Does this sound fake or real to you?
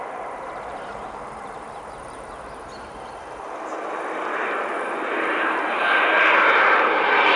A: fake